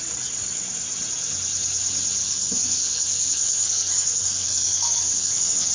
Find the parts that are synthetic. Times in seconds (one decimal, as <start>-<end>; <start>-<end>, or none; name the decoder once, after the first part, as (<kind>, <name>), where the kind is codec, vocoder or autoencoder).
2.2-5.7 (codec, SNAC)